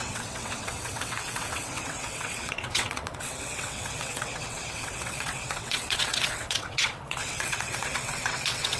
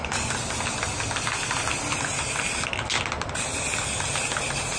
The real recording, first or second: second